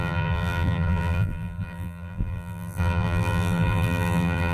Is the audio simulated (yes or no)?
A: yes